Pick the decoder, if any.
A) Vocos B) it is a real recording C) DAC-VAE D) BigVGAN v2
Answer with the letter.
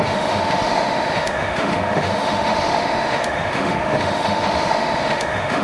C